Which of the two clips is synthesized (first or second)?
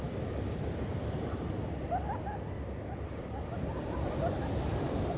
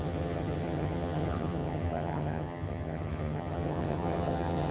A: second